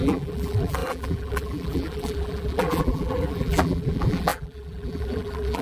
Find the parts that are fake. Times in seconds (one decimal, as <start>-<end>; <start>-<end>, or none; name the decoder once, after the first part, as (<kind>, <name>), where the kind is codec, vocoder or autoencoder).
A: 0.0-5.6 (vocoder, BigVGAN v2)